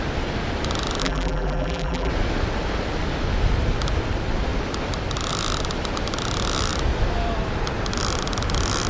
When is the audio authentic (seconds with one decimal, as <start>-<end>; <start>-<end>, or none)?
0.0-1.0; 2.1-8.9